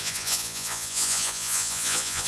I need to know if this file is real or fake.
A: fake